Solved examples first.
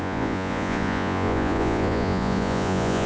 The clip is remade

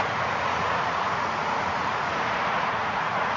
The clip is remade